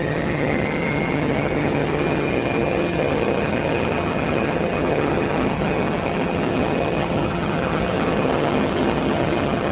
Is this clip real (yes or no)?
no